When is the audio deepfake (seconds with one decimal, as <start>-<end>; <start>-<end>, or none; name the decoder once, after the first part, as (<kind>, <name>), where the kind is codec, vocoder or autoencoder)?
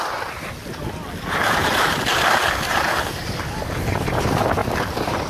2.1-4.0 (vocoder, BigVGAN v2); 4.6-5.3